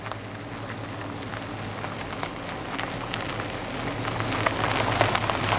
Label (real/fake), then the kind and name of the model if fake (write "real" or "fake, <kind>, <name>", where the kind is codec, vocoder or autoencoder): real